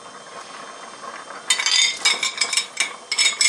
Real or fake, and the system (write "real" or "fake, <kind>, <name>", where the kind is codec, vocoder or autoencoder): real